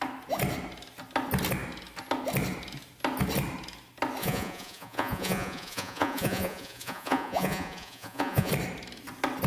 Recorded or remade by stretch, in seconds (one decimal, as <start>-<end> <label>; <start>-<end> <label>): 0.0-4.2 recorded; 4.2-8.5 remade; 8.5-9.5 recorded